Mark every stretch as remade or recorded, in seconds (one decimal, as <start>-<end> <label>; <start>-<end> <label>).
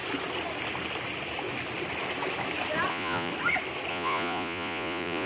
0.0-2.9 recorded; 2.9-3.3 remade; 3.3-3.9 recorded; 3.9-5.3 remade